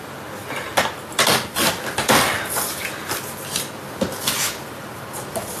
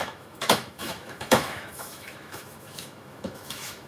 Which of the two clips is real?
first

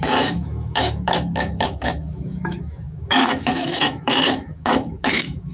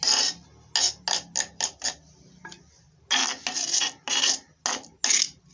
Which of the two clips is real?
second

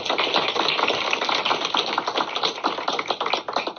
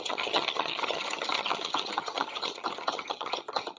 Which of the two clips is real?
first